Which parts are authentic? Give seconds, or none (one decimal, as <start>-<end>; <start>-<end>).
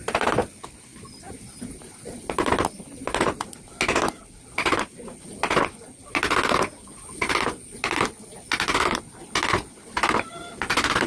0.0-11.1